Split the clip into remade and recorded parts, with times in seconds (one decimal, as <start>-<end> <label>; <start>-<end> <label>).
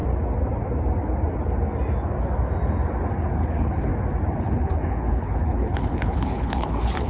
0.0-3.2 recorded; 3.2-3.9 remade; 3.9-4.4 recorded; 4.4-7.1 remade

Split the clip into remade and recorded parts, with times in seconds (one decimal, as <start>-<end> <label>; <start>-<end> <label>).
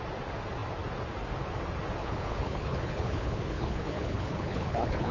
0.0-2.0 recorded; 2.0-5.1 remade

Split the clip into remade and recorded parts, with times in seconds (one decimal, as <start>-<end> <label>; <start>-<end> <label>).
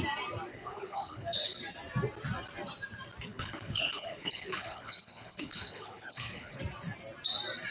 0.0-0.5 recorded; 0.5-1.6 remade; 1.6-3.3 recorded; 3.3-6.6 remade; 6.6-7.7 recorded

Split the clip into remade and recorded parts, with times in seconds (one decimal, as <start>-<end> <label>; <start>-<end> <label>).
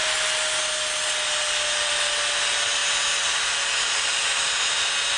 0.0-5.2 recorded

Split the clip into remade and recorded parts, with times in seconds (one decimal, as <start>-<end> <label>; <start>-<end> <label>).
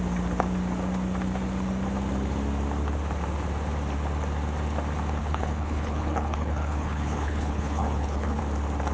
0.0-5.2 recorded; 5.2-8.4 remade; 8.4-8.9 recorded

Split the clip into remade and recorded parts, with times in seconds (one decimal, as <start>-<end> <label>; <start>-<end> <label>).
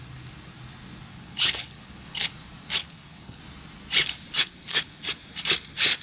0.0-1.1 recorded; 1.1-2.3 remade; 2.3-2.8 recorded; 2.8-3.4 remade; 3.4-4.4 recorded; 4.4-5.0 remade; 5.0-6.0 recorded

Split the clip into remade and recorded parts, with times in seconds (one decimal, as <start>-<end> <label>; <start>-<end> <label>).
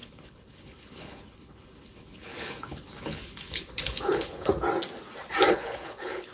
0.0-4.5 remade; 4.5-5.5 recorded; 5.5-6.3 remade